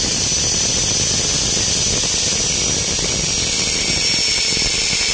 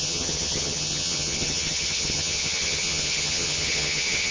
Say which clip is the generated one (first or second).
second